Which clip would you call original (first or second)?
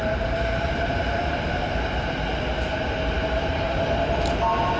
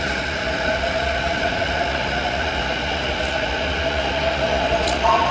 first